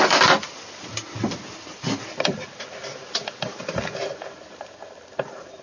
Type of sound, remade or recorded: remade